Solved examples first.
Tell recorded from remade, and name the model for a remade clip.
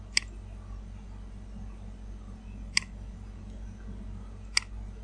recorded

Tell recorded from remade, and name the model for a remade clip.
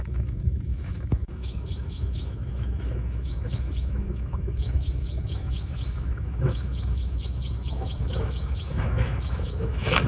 remade, autoencoder, DAC-VAE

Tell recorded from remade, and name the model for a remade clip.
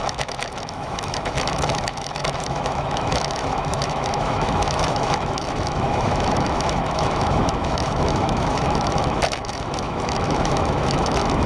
remade, autoencoder, DAC-VAE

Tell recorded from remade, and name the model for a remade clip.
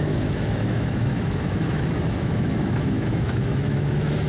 remade, autoencoder, DAC-VAE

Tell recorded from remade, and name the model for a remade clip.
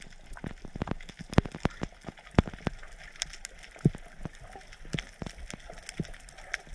recorded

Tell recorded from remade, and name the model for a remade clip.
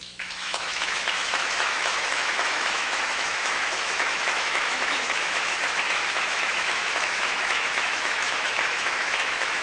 remade, autoencoder, DAC-VAE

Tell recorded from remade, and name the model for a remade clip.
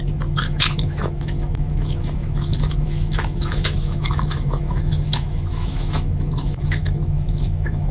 remade, autoencoder, DAC-VAE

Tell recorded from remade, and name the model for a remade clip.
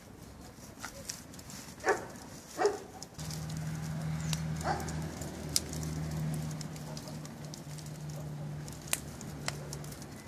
recorded